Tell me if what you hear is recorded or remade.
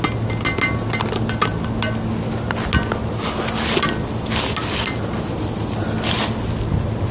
recorded